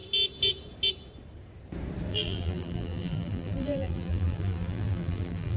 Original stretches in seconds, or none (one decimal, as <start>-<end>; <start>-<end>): 0.0-2.1